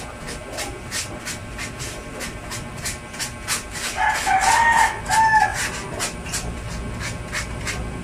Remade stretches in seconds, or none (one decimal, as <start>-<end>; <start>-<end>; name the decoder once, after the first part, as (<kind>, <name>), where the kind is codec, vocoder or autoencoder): 5.5-6.7 (vocoder, BigVGAN v2)